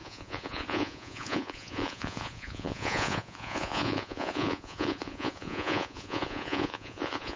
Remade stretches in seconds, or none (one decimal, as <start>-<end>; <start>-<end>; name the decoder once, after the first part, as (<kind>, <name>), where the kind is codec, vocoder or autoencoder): 0.0-7.4 (vocoder, Vocos)